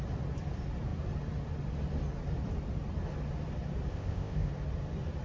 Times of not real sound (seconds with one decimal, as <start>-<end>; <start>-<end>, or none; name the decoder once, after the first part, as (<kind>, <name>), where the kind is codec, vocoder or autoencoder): 3.9-4.5 (codec, ZipCodec)